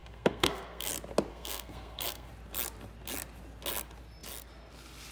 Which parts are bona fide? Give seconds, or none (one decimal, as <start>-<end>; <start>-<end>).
0.9-1.3; 2.3-5.1